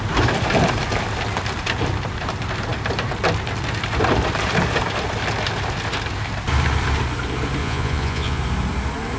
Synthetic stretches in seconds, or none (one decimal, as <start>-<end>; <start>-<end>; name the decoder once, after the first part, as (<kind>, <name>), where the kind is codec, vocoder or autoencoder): 7.6-8.4 (vocoder, Vocos)